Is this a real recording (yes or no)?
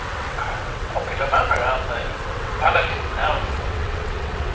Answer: no